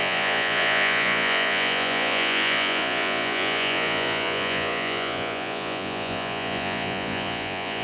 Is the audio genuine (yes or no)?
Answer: no